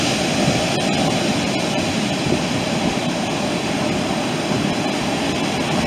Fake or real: real